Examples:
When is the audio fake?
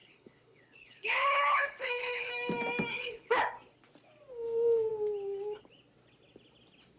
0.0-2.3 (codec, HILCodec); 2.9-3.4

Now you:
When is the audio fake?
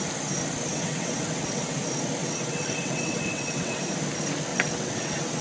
0.7-1.8 (vocoder, WaveNeXt); 2.2-3.8; 4.5-5.4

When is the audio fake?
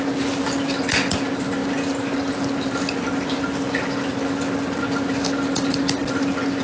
none